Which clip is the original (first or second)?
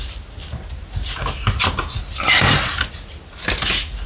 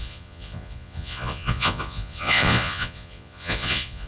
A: first